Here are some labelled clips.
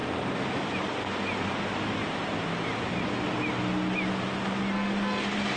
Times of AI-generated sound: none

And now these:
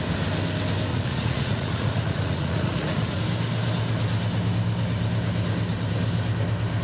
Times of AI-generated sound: 0.9-3.2 (vocoder, Vocos)